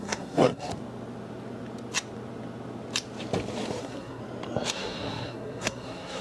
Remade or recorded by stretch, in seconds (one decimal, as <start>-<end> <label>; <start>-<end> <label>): 0.0-0.7 remade; 0.7-3.8 recorded; 3.8-4.2 remade; 4.2-4.7 recorded; 4.7-6.2 remade